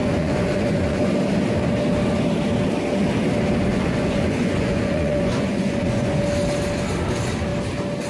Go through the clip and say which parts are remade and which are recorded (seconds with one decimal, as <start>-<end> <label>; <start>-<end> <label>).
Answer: 0.0-1.1 remade; 1.1-3.7 recorded; 3.7-6.2 remade; 6.2-8.1 recorded